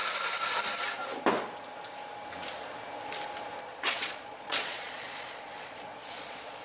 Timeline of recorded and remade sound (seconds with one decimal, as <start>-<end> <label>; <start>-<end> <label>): 0.0-3.6 recorded; 3.6-6.6 remade